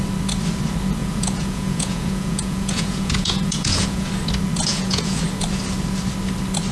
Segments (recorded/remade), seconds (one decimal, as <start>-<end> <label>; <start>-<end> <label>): 0.0-1.0 recorded; 1.0-4.1 remade; 4.1-4.7 recorded; 4.7-5.2 remade; 5.2-6.7 recorded